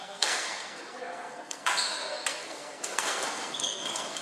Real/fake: fake